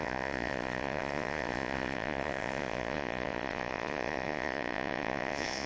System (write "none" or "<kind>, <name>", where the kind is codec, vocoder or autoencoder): vocoder, Vocos